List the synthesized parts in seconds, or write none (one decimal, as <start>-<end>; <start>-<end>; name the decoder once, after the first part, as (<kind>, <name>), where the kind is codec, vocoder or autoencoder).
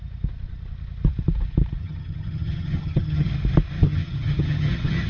1.8-3.3 (vocoder, HiFi-GAN); 3.8-5.1